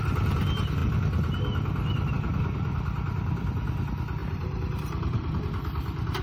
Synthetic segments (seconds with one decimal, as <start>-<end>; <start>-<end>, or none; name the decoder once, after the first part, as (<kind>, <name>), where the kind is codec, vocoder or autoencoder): 4.2-5.4 (vocoder, BigVGAN v2)